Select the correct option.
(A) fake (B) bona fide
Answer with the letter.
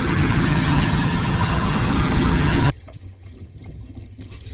A